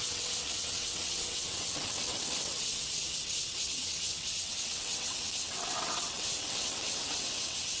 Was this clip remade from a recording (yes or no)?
yes